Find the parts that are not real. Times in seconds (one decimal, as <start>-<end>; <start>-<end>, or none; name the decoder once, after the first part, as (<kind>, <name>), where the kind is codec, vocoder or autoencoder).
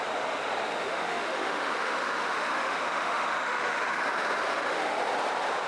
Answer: 0.7-4.0 (autoencoder, DAC-VAE); 4.5-5.0